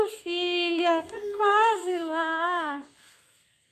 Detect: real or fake fake